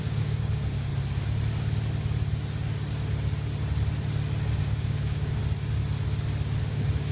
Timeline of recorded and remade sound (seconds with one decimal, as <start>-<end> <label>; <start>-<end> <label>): 0.0-0.9 remade; 0.9-4.6 recorded; 4.6-5.4 remade; 5.4-6.6 recorded; 6.6-7.1 remade